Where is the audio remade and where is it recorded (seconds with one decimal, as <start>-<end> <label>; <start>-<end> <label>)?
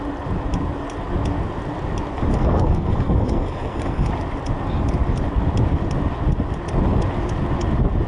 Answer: 0.0-2.3 recorded; 2.3-4.1 remade; 4.1-8.1 recorded